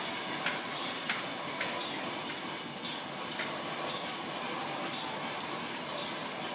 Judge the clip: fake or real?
real